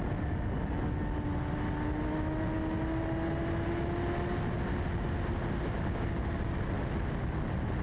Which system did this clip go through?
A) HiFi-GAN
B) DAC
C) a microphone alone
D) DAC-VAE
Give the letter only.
C